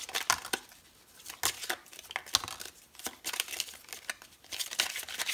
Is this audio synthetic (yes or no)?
no